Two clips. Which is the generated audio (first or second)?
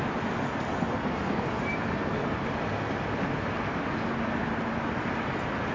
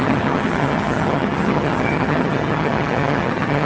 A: second